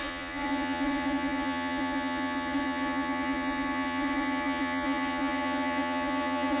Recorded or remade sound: remade